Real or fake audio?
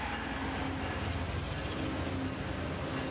real